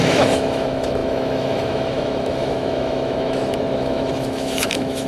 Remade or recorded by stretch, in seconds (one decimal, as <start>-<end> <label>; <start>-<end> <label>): 0.0-5.1 remade